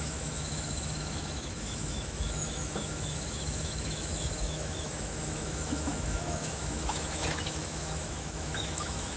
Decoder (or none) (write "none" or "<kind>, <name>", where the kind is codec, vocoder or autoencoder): autoencoder, DAC-VAE